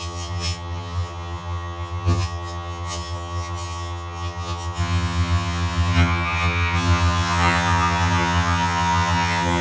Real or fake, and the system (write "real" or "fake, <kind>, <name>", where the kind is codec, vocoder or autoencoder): fake, vocoder, HiFi-GAN